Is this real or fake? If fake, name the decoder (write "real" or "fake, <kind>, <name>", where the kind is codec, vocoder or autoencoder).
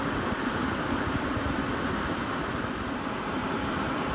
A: real